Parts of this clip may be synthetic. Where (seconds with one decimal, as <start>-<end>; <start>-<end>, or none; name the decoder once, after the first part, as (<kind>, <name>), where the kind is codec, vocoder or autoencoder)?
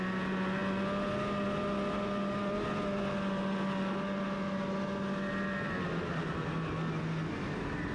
none